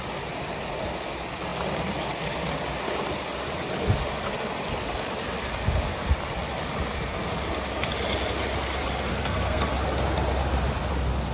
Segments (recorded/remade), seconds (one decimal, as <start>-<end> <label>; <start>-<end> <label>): 0.0-9.1 recorded; 9.1-9.7 remade; 9.7-11.3 recorded